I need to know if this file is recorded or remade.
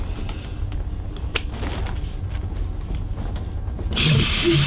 recorded